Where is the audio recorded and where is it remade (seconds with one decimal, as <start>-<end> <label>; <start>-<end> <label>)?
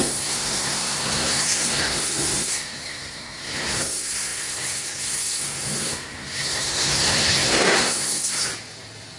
0.0-8.5 remade; 8.5-9.2 recorded